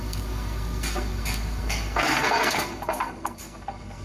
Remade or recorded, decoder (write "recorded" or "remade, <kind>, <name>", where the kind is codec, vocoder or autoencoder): remade, codec, SNAC